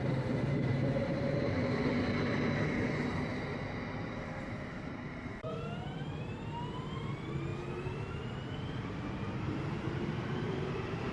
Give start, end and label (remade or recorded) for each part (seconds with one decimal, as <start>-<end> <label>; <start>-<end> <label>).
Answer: 0.0-3.3 remade; 3.3-3.9 recorded; 3.9-7.5 remade; 7.5-8.6 recorded; 8.6-11.1 remade